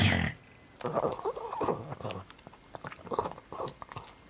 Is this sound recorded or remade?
recorded